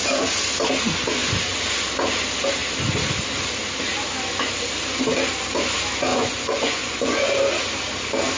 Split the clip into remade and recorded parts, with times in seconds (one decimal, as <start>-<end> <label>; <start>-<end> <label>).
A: 0.0-6.1 recorded; 6.1-7.3 remade; 7.3-8.4 recorded